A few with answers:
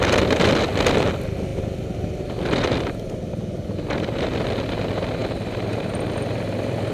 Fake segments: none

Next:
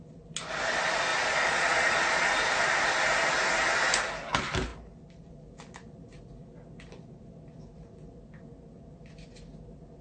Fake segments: 1.1-2.3 (vocoder, Vocos)

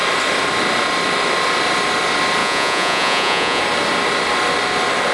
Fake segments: 2.4-3.6 (vocoder, Vocos)

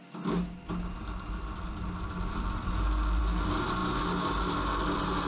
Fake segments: none

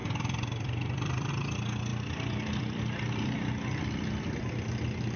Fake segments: 0.0-1.3 (vocoder, BigVGAN v2); 1.9-4.5

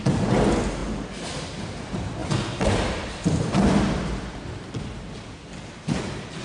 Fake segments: none

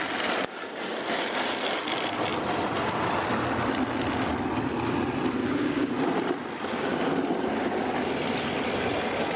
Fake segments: 5.4-5.9 (codec, DAC)

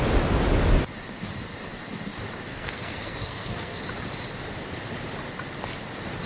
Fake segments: 2.5-3.8 (codec, SNAC)